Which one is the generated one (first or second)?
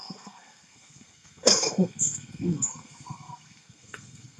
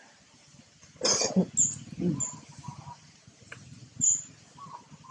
first